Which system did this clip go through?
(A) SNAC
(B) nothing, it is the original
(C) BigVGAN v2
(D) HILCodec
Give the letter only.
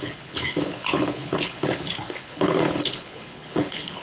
D